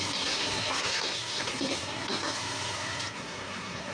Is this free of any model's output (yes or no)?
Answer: no